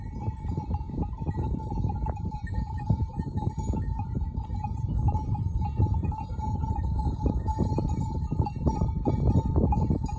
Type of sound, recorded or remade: remade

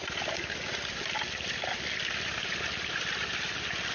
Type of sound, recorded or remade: recorded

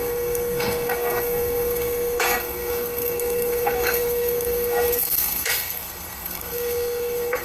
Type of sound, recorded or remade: remade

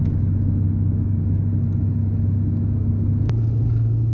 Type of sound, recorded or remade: recorded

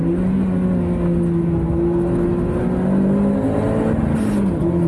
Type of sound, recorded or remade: recorded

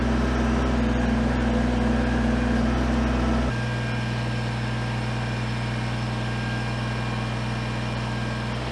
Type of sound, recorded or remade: recorded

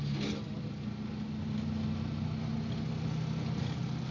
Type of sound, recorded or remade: recorded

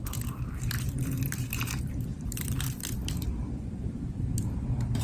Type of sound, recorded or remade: remade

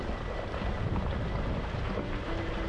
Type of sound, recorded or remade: recorded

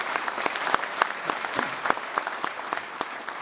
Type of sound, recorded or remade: recorded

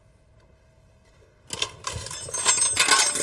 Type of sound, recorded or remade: recorded